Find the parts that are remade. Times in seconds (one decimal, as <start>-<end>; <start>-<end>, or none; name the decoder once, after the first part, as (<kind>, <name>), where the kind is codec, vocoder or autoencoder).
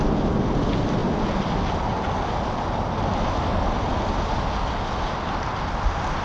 none